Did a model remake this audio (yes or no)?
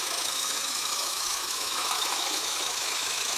yes